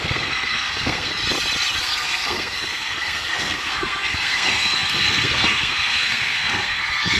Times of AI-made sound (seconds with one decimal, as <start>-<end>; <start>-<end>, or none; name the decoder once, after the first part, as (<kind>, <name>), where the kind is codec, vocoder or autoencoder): 0.0-1.1 (codec, SNAC); 1.8-7.2